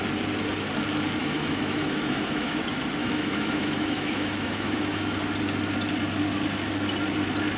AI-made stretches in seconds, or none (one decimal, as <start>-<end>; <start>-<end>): 1.2-2.6; 3.0-5.2